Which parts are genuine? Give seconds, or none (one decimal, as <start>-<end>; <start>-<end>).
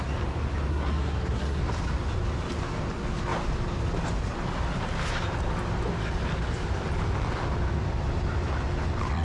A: 0.0-0.7; 1.6-9.2